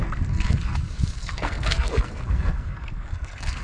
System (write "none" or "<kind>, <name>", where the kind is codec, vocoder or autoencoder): codec, SNAC